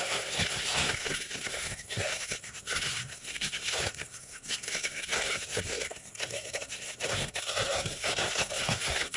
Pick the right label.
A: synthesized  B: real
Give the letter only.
A